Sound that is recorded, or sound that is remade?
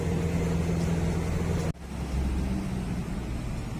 recorded